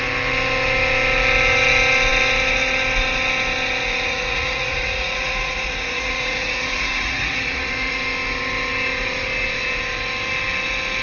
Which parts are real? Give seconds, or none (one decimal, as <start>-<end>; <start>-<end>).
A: 0.0-4.1; 8.0-11.0